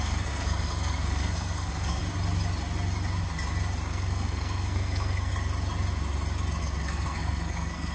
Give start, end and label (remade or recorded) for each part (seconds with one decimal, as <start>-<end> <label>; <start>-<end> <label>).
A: 0.0-2.0 remade; 2.0-3.9 recorded; 3.9-5.3 remade; 5.3-6.6 recorded; 6.6-7.9 remade

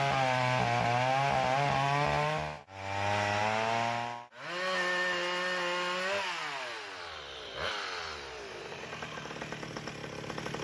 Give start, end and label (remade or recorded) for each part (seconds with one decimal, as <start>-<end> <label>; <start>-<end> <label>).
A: 0.0-10.6 recorded

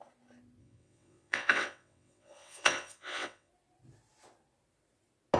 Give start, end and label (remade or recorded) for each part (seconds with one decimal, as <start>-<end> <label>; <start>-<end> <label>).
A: 0.0-0.6 recorded; 0.6-3.5 remade; 3.5-5.4 recorded

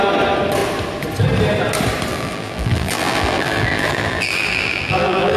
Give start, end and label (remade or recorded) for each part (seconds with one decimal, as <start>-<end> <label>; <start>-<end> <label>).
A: 0.0-2.1 recorded; 2.1-5.4 remade

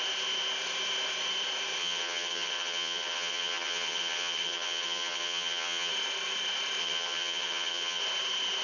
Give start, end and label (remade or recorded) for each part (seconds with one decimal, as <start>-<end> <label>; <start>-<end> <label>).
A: 0.0-1.8 recorded; 1.8-5.9 remade; 5.9-6.8 recorded; 6.8-8.0 remade; 8.0-8.6 recorded

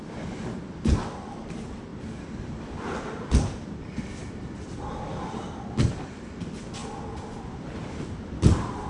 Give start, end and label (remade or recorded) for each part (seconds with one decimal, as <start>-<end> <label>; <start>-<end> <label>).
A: 0.0-6.8 remade; 6.8-7.4 recorded; 7.4-8.9 remade

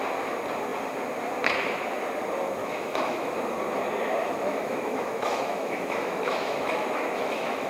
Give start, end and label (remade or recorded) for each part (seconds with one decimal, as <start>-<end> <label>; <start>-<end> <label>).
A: 0.0-2.6 recorded; 2.6-3.3 remade; 3.3-4.2 recorded; 4.2-7.7 remade